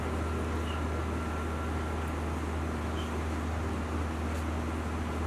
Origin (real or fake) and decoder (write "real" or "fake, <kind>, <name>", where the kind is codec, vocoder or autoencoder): real